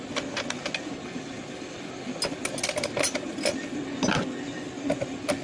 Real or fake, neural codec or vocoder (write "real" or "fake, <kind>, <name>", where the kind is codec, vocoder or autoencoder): real